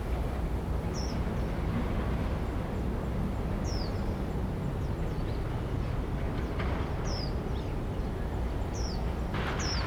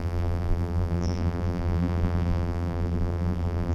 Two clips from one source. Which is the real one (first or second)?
first